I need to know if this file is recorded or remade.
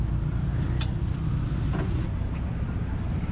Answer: recorded